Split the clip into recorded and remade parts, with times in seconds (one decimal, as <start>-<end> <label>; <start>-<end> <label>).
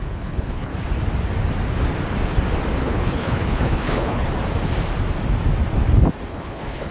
0.0-0.7 remade; 0.7-2.8 recorded; 2.8-4.3 remade; 4.3-6.3 recorded; 6.3-6.9 remade